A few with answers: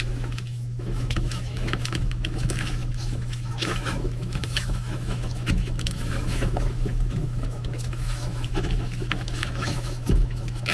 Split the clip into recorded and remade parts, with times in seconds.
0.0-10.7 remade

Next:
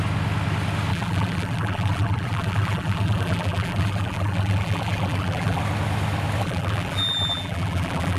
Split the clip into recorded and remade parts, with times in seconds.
0.0-0.9 recorded; 0.9-5.6 remade; 5.6-6.4 recorded; 6.4-8.2 remade

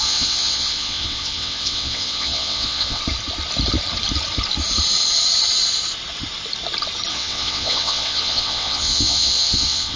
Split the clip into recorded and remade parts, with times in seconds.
0.0-3.0 remade; 3.0-7.1 recorded; 7.1-10.0 remade

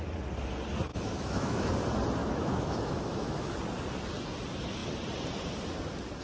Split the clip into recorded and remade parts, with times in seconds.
0.0-0.9 recorded; 0.9-1.7 remade; 1.7-2.2 recorded; 2.2-3.5 remade; 3.5-6.2 recorded

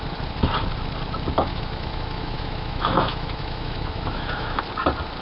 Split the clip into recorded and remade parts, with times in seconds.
0.0-1.5 recorded; 1.5-4.6 remade; 4.6-5.2 recorded

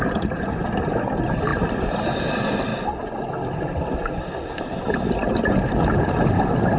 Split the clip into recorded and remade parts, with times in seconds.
0.0-6.8 recorded

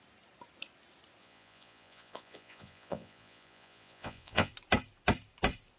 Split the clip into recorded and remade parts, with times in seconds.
0.0-1.2 recorded; 1.2-4.5 remade; 4.5-5.8 recorded